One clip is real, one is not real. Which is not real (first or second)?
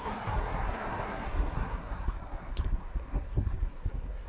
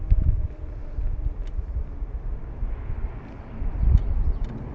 first